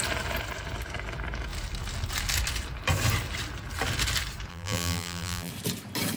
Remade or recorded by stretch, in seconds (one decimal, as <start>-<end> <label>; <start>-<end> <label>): 0.0-4.5 recorded; 4.5-5.5 remade; 5.5-6.2 recorded